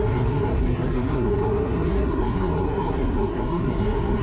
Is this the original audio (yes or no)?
no